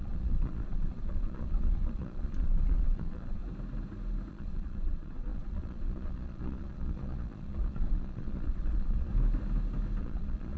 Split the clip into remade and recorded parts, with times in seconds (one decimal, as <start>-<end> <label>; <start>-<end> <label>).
0.0-3.4 remade; 3.4-4.3 recorded; 4.3-9.1 remade; 9.1-10.0 recorded; 10.0-10.6 remade